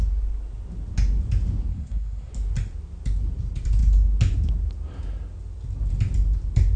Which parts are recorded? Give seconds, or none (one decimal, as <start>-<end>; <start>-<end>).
0.0-1.7; 2.3-6.8